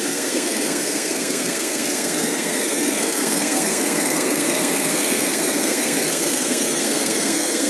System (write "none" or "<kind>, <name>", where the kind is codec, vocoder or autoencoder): codec, SNAC